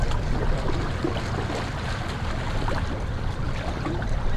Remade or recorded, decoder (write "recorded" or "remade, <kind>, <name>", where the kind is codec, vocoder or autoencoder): recorded